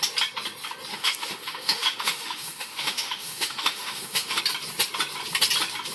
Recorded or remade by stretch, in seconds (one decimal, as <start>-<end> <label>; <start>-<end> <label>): 0.0-0.9 recorded; 0.9-4.4 remade; 4.4-5.9 recorded